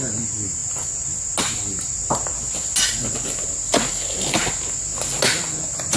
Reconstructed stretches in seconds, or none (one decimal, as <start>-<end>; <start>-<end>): none